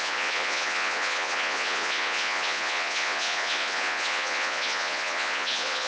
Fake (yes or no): yes